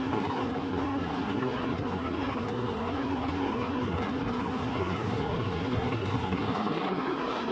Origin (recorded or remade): remade